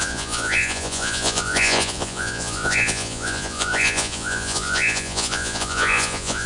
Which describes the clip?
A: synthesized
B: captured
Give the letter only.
A